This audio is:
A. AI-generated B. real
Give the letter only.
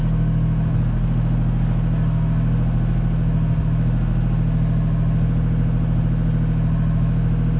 B